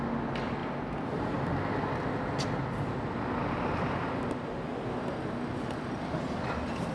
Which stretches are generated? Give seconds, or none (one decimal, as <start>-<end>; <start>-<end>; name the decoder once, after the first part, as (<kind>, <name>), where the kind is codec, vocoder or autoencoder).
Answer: none